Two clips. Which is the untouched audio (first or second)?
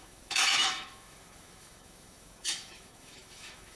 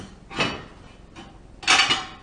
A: second